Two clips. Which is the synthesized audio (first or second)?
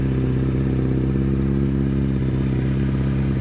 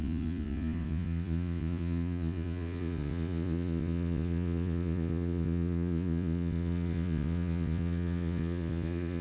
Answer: second